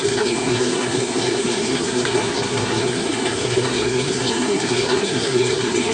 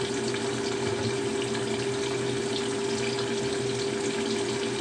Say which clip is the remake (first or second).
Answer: first